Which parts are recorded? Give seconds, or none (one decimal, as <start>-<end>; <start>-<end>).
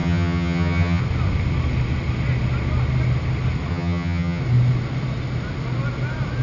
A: 1.0-3.7; 4.4-6.4